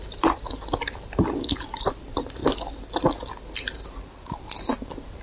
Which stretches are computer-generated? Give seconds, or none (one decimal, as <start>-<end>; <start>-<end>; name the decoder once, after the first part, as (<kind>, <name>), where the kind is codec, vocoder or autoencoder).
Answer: none